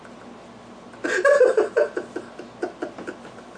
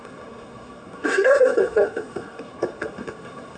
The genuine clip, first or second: first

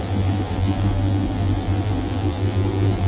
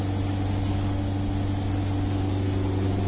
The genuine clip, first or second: second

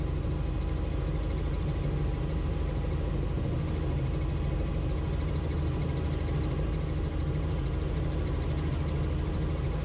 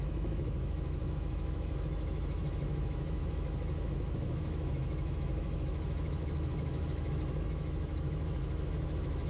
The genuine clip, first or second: first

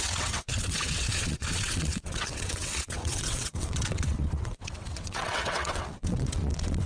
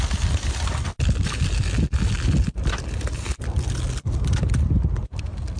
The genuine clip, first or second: second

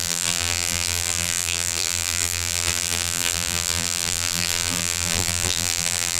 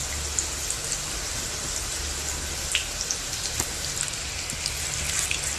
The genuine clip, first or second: second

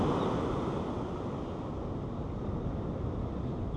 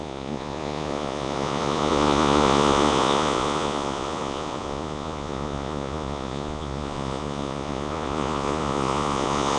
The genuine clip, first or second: first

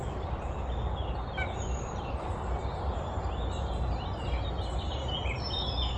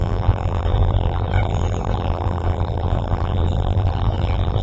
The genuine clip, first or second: first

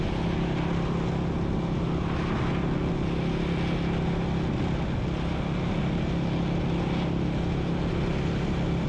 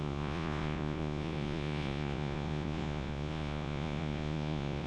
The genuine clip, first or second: first